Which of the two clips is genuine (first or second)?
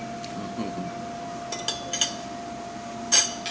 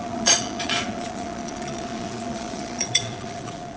first